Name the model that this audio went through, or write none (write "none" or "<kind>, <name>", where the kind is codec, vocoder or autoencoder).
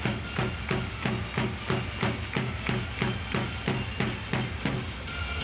none